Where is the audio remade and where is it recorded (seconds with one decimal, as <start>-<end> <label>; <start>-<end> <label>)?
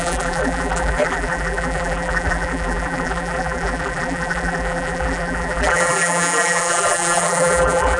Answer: 0.0-8.0 remade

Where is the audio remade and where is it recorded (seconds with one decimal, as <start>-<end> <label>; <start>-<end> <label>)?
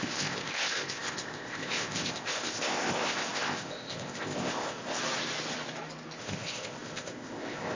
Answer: 0.0-5.0 remade; 5.0-6.2 recorded; 6.2-7.7 remade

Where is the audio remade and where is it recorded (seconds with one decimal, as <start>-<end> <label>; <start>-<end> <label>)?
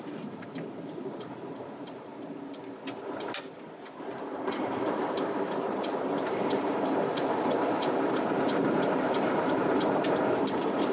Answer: 0.0-2.1 remade; 2.1-4.1 recorded; 4.1-10.9 remade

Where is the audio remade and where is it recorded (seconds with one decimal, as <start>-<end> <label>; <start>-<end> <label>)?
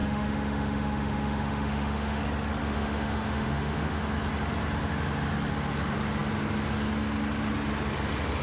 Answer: 0.0-2.2 remade; 2.2-2.6 recorded; 2.6-4.0 remade; 4.0-8.4 recorded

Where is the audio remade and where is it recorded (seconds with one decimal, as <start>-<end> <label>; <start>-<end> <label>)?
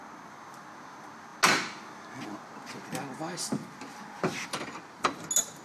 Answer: 0.0-5.6 recorded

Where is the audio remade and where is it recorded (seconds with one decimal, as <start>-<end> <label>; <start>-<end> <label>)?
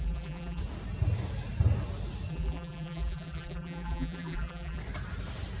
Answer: 0.0-0.6 remade; 0.6-2.3 recorded; 2.3-4.8 remade; 4.8-5.6 recorded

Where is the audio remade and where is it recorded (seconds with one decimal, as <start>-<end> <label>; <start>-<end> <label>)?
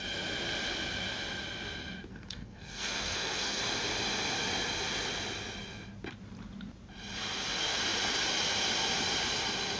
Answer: 0.0-2.1 recorded; 2.1-3.6 remade; 3.6-9.8 recorded